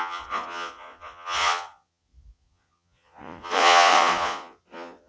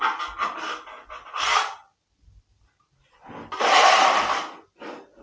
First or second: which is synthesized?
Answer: first